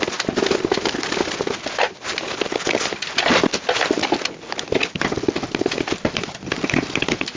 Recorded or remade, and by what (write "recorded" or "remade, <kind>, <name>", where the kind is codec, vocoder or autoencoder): recorded